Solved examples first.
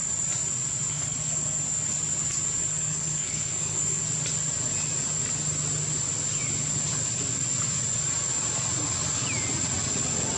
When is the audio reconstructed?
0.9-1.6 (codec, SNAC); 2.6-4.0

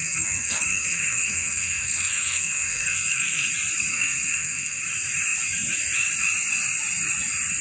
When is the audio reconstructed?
0.0-3.5 (codec, SNAC); 3.9-4.8

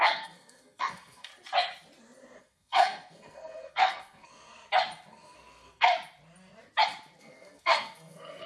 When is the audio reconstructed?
0.0-1.3 (codec, SNAC); 2.4-4.5; 5.1-5.9; 7.2-8.5

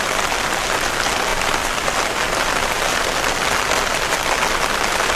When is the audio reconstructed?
none